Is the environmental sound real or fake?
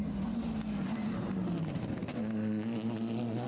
real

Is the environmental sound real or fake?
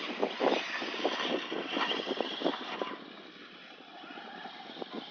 real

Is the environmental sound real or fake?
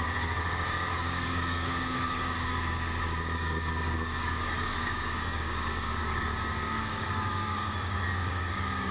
fake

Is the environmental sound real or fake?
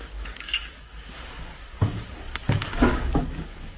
fake